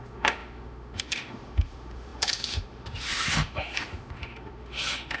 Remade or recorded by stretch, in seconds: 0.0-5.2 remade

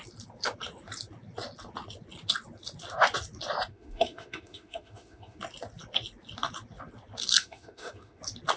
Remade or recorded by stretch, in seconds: 0.0-3.7 recorded; 3.7-5.4 remade; 5.4-7.4 recorded; 7.4-8.2 remade; 8.2-8.6 recorded